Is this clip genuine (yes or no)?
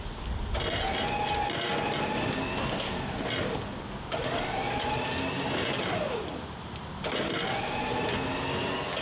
yes